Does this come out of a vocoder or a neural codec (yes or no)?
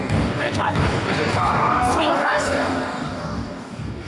yes